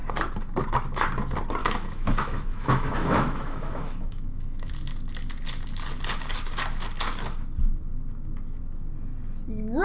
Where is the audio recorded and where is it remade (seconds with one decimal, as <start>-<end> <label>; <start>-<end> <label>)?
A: 0.0-1.6 recorded; 1.6-4.7 remade; 4.7-9.8 recorded